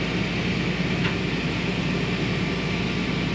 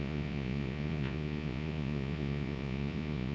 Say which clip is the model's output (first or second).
second